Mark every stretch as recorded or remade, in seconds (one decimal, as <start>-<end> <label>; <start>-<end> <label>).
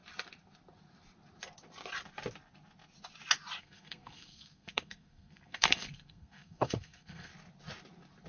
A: 0.0-3.6 recorded; 3.6-7.3 remade; 7.3-8.3 recorded